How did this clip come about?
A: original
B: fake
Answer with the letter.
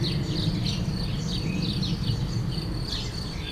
A